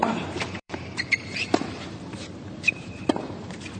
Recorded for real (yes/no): no